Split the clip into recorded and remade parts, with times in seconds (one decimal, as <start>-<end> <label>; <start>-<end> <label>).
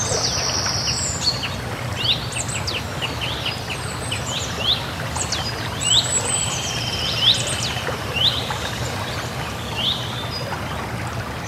0.0-6.4 recorded; 6.4-9.1 remade; 9.1-11.5 recorded